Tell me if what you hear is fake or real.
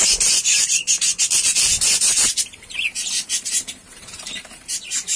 fake